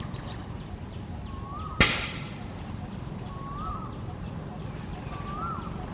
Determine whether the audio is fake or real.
real